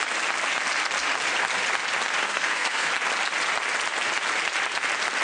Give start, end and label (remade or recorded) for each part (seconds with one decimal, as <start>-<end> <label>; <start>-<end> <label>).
0.0-2.2 recorded; 2.2-2.9 remade; 2.9-5.2 recorded